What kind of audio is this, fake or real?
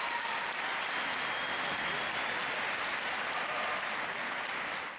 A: real